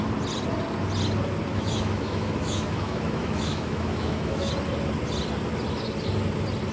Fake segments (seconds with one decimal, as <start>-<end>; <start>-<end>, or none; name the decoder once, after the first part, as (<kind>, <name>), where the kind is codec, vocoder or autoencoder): 1.5-4.5 (autoencoder, DAC-VAE)